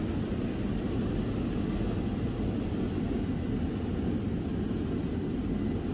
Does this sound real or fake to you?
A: real